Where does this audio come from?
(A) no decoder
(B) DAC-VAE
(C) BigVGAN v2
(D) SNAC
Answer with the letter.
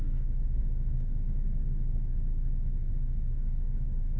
B